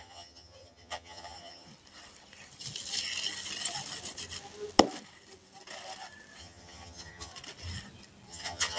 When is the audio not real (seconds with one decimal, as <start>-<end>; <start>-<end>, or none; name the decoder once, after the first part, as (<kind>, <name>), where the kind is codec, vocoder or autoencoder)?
0.0-1.7 (vocoder, HiFi-GAN); 6.4-7.3; 8.3-8.8